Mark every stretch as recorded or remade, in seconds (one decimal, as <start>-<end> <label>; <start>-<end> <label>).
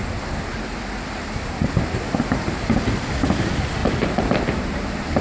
0.0-3.8 recorded; 3.8-5.2 remade